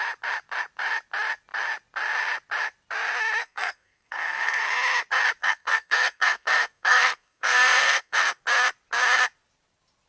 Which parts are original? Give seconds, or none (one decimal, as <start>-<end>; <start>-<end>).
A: 0.0-3.4; 4.6-5.4; 8.4-10.1